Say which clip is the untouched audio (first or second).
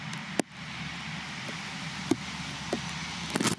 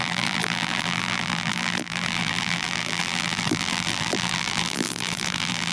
first